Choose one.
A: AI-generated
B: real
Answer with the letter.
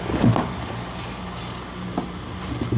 B